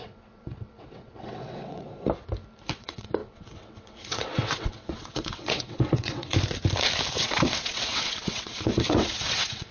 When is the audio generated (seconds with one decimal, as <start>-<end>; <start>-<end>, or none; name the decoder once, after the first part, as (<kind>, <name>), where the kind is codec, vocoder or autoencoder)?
0.0-1.9 (vocoder, WaveNeXt); 2.7-6.3; 7.1-9.7